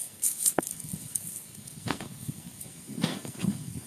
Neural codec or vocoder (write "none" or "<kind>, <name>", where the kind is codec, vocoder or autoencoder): codec, SNAC